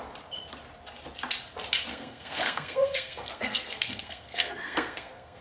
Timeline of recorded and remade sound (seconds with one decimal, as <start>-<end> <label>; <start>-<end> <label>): 0.0-1.9 recorded; 1.9-5.4 remade